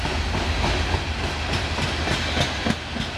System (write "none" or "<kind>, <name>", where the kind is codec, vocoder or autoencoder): none